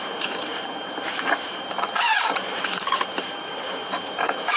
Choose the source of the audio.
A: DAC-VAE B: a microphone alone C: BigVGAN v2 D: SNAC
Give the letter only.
C